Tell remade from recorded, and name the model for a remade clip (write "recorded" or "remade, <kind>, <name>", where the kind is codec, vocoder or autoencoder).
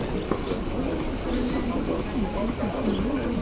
recorded